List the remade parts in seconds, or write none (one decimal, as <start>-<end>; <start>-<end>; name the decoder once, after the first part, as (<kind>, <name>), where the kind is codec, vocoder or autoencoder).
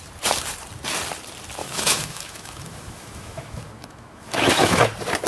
1.6-4.8 (autoencoder, DAC-VAE)